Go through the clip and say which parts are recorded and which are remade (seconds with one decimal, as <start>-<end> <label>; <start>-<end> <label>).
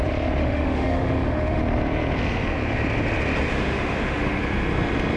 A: 0.0-0.4 recorded; 0.4-1.6 remade; 1.6-3.5 recorded; 3.5-4.4 remade; 4.4-5.2 recorded